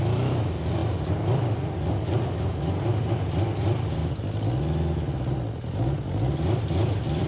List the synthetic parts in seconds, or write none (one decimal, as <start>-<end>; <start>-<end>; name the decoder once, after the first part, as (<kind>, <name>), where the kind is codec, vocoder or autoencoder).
0.0-4.0 (vocoder, BigVGAN v2); 6.6-7.3